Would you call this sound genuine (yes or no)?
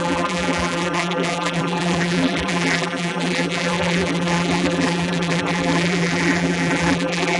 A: no